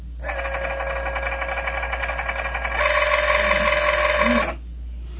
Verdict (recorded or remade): recorded